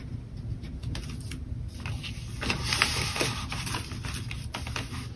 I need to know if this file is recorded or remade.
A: recorded